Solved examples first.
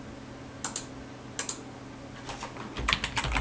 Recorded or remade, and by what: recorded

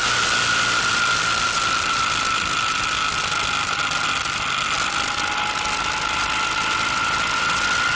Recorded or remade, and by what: recorded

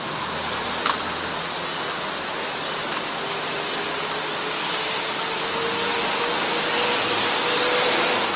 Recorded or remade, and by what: recorded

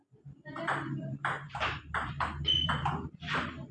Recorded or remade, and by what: remade, vocoder, BigVGAN v2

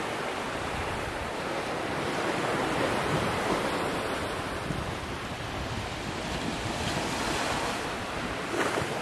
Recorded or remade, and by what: remade, vocoder, BigVGAN v2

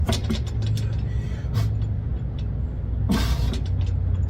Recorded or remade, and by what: recorded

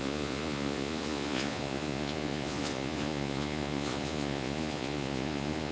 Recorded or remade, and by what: remade, vocoder, Vocos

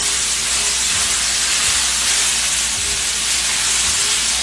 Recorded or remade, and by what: remade, vocoder, BigVGAN v2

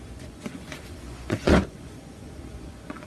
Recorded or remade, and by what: remade, vocoder, Vocos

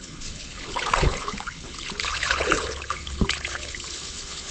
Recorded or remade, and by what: remade, codec, HILCodec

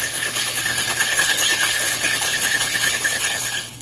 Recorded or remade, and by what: remade, codec, HILCodec